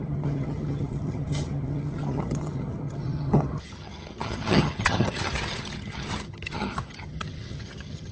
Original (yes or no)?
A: no